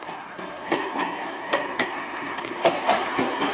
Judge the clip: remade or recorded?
remade